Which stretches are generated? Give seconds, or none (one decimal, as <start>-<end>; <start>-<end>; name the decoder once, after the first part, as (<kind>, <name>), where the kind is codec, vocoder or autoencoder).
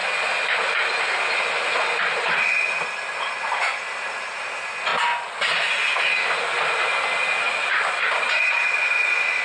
none